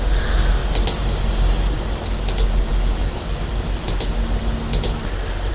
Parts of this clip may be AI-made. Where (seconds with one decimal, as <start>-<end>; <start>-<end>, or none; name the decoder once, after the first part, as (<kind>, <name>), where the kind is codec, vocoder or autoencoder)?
none